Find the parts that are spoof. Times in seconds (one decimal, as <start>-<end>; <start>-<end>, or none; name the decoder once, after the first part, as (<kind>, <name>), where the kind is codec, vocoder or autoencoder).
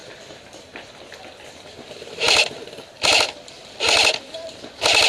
none